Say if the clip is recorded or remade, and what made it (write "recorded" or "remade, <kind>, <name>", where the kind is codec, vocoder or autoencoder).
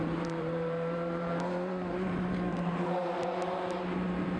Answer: remade, vocoder, BigVGAN v2